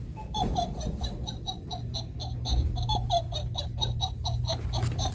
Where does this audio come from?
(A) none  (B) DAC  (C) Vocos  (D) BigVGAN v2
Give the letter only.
A